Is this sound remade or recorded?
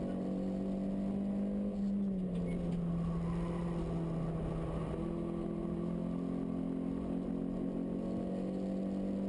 recorded